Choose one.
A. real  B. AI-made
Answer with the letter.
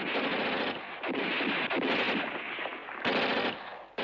A